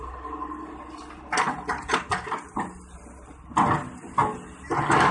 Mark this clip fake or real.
real